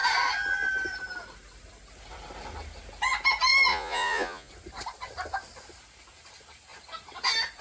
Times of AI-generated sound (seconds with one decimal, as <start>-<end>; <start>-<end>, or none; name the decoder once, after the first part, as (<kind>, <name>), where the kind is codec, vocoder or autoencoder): 3.7-4.5 (vocoder, Vocos)